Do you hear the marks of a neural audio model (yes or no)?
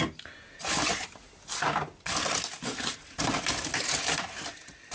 no